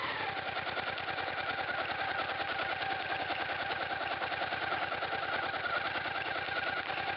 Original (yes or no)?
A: yes